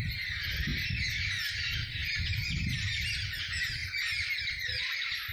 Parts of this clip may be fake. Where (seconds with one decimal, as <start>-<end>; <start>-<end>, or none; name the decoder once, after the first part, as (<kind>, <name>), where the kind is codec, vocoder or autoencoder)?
none